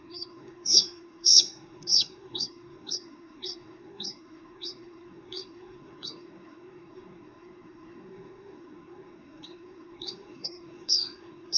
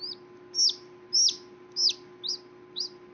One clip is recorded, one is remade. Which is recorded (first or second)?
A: second